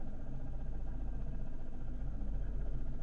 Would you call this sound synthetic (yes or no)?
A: no